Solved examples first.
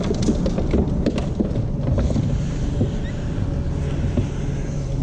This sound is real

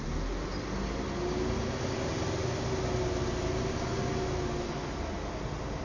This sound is real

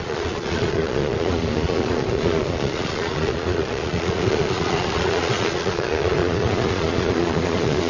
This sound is fake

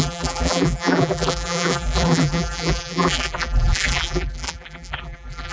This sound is fake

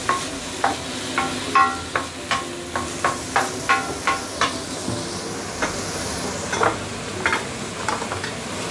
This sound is real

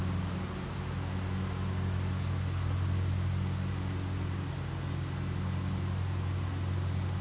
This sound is real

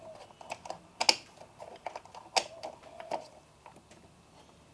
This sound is real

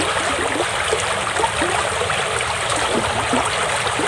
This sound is real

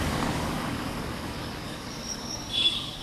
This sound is fake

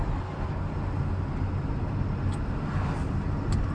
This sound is real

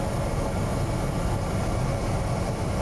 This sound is real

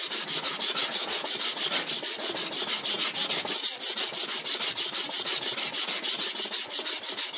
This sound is real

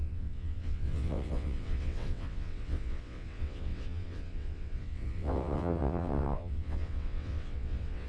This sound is fake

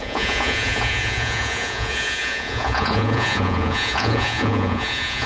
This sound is fake